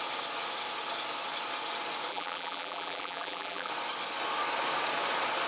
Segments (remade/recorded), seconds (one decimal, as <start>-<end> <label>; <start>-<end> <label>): 0.0-2.1 recorded; 2.1-3.7 remade; 3.7-5.5 recorded